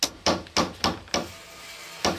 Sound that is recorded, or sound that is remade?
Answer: recorded